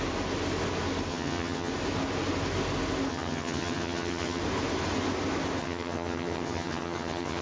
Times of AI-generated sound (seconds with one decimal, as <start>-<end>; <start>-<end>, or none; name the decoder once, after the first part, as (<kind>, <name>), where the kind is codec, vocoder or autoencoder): 1.1-1.7 (vocoder, HiFi-GAN); 3.1-4.4; 5.6-7.4